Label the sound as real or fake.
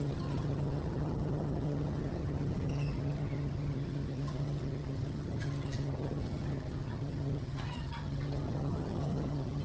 fake